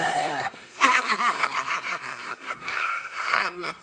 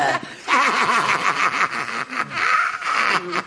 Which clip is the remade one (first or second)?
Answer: first